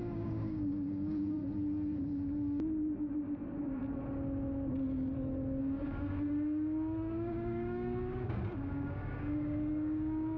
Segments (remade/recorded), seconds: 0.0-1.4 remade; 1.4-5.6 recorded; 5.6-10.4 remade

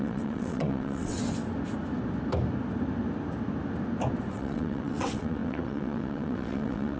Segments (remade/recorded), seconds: 0.0-1.2 remade; 1.2-4.3 recorded; 4.3-7.0 remade

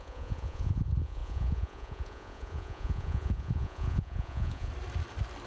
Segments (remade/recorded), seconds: 0.0-4.7 remade; 4.7-5.5 recorded

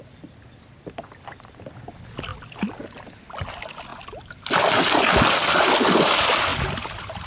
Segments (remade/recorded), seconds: 0.0-7.3 recorded

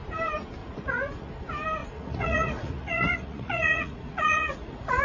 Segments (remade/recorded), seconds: 0.0-0.6 recorded; 0.6-1.3 remade; 1.3-1.8 recorded; 1.8-5.0 remade